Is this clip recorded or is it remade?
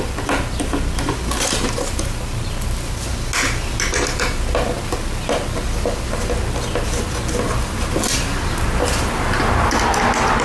recorded